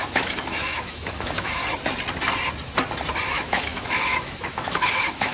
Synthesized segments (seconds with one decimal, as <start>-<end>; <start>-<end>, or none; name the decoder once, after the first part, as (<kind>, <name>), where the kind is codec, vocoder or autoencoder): 0.0-1.6 (autoencoder, DAC-VAE); 3.3-5.3